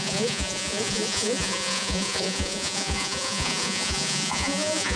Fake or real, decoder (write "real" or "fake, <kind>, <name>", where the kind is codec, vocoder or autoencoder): fake, vocoder, Vocos